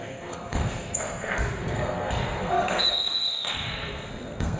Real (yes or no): no